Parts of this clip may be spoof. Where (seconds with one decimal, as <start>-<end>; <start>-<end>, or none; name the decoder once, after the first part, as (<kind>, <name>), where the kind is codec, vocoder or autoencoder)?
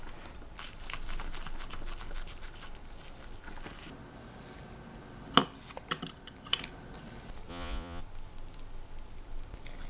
7.5-8.0 (vocoder, Vocos)